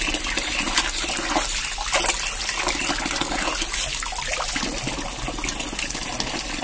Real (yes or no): yes